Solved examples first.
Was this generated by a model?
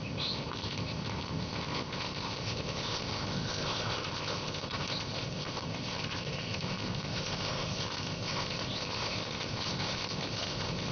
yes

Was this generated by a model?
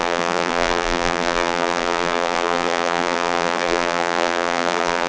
yes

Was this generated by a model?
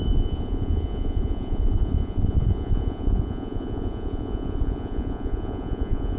yes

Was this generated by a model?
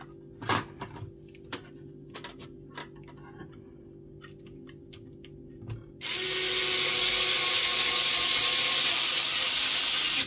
no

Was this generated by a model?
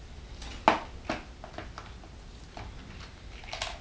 no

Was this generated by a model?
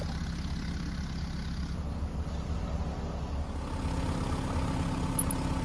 no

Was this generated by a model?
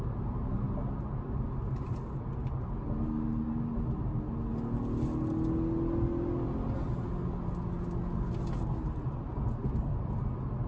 no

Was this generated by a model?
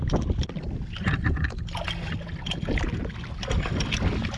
no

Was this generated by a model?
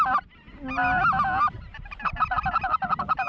no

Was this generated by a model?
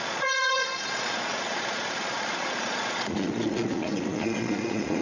yes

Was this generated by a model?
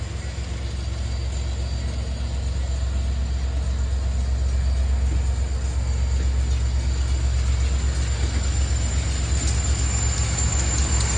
no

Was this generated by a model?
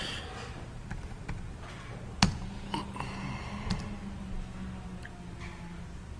no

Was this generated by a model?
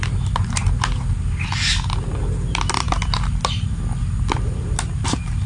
no